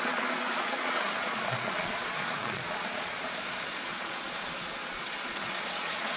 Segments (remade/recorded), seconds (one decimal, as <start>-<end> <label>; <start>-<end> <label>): 0.0-6.2 remade